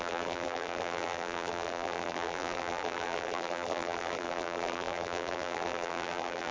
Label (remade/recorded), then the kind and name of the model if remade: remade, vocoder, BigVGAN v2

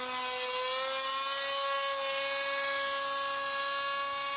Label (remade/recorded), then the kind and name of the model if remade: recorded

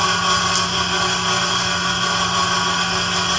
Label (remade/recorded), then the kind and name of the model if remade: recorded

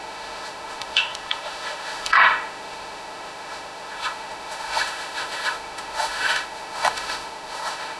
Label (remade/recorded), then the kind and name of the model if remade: remade, autoencoder, DAC-VAE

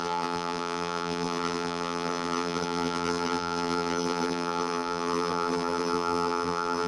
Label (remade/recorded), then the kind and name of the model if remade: remade, vocoder, BigVGAN v2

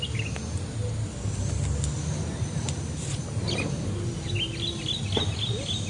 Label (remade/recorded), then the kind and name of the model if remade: recorded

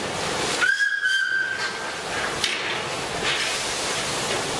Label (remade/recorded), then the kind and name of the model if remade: recorded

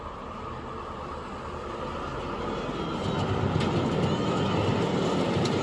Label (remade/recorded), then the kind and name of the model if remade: recorded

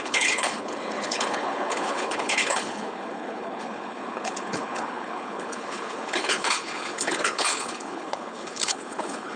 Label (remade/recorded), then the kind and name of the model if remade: remade, codec, HILCodec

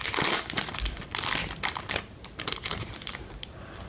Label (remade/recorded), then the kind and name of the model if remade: remade, vocoder, BigVGAN v2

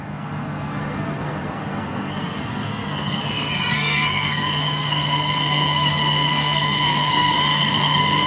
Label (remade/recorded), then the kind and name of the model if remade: remade, codec, SNAC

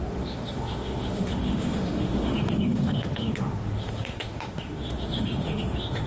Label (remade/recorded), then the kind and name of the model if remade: remade, autoencoder, DAC-VAE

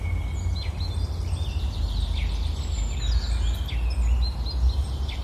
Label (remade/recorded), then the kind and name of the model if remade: recorded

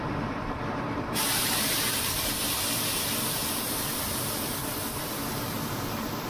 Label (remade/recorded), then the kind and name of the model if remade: remade, vocoder, BigVGAN v2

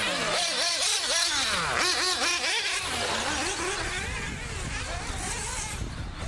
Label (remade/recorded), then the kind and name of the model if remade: recorded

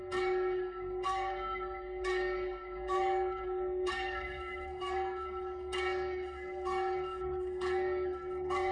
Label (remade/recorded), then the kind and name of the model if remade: remade, codec, SNAC